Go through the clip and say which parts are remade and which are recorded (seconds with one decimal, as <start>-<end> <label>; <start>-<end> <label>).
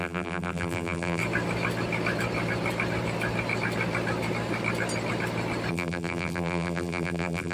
0.0-1.2 remade; 1.2-5.7 recorded; 5.7-7.5 remade